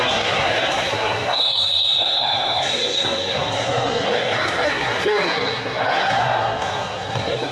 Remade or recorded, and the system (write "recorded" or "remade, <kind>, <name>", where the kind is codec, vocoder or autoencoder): remade, codec, SNAC